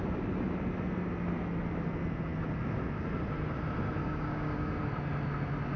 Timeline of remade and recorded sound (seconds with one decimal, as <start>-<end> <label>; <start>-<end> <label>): 0.0-4.0 recorded; 4.0-4.8 remade; 4.8-5.8 recorded